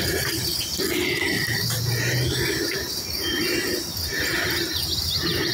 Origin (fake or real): real